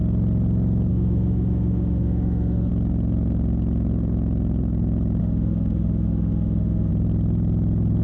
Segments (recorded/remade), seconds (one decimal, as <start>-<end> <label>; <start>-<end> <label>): 0.0-0.9 recorded; 0.9-2.7 remade; 2.7-5.2 recorded; 5.2-6.9 remade; 6.9-8.0 recorded